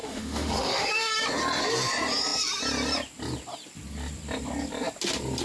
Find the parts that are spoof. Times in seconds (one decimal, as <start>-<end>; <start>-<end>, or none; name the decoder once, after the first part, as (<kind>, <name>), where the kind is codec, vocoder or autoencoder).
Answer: 0.0-1.1 (autoencoder, DAC-VAE)